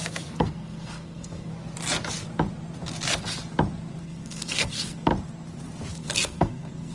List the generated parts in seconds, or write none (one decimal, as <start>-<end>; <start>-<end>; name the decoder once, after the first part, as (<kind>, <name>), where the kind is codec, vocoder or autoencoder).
0.0-1.5 (codec, SNAC); 4.0-5.1; 5.9-6.9